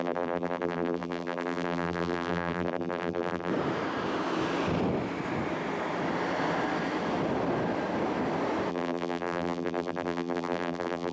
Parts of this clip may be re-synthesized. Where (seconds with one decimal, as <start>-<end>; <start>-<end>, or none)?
0.0-3.5; 8.7-11.1